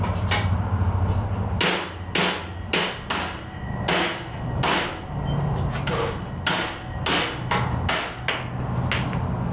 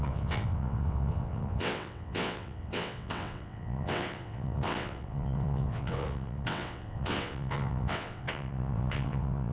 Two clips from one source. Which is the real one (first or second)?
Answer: first